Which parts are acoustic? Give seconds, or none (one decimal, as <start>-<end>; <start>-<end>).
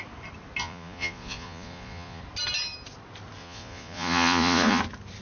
0.0-0.6; 2.2-3.4; 4.8-5.2